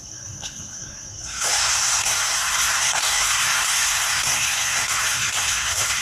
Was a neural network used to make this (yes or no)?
yes